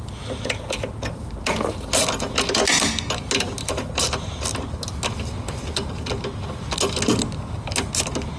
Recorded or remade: recorded